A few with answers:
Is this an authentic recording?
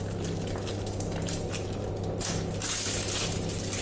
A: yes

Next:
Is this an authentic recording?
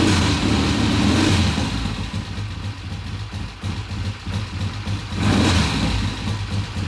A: yes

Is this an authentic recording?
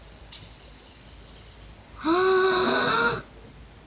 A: yes